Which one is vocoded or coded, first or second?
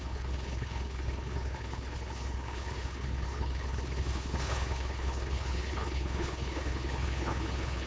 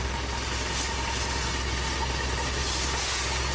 first